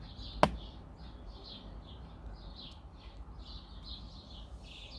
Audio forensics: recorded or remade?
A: recorded